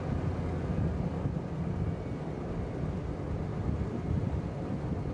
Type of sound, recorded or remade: recorded